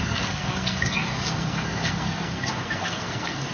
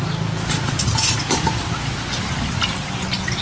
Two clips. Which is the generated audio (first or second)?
first